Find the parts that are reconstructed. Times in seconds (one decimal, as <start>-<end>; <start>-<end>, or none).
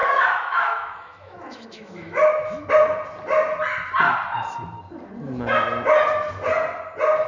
0.0-2.7